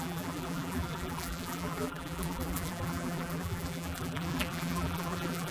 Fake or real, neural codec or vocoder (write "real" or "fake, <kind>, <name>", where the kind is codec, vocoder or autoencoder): fake, vocoder, BigVGAN v2